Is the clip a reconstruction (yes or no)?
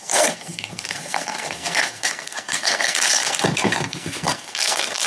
yes